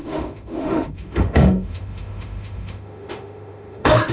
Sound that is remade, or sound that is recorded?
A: remade